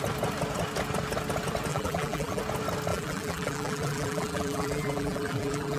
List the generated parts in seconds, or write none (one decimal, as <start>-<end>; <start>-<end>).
1.7-2.4; 2.9-5.8